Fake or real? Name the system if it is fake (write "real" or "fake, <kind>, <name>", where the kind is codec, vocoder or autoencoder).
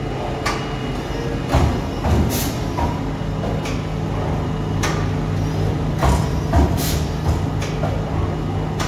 real